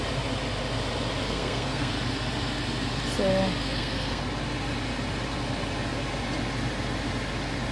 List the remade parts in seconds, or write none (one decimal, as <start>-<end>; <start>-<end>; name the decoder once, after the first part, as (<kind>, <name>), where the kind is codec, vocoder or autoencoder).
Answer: 1.2-1.9 (codec, SNAC); 3.6-4.2